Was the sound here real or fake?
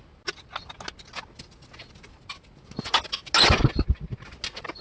real